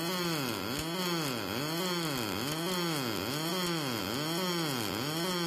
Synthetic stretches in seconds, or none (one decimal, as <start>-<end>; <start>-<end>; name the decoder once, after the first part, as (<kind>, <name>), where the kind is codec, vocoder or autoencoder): none